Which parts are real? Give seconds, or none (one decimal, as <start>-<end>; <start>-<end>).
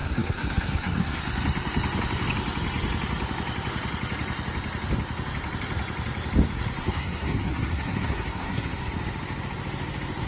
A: 1.2-6.8; 8.9-10.3